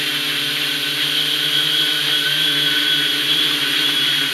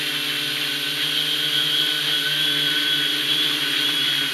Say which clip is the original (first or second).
second